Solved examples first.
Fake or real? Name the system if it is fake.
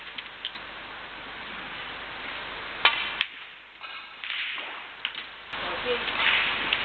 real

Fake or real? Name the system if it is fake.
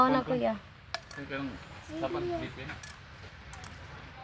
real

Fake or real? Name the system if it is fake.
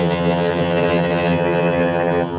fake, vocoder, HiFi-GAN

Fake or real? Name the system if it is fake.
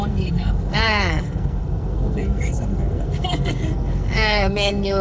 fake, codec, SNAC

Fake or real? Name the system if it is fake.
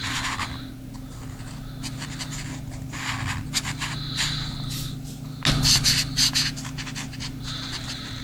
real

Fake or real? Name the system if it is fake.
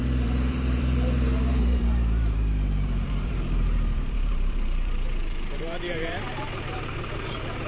fake, vocoder, BigVGAN v2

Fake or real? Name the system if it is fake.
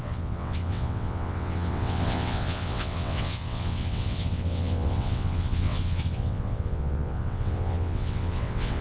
fake, vocoder, WaveNeXt